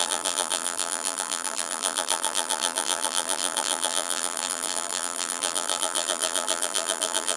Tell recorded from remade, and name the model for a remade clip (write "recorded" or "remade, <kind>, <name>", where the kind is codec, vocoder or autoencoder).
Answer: remade, vocoder, BigVGAN v2